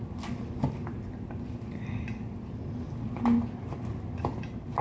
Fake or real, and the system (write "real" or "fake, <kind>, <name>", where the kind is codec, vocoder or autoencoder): real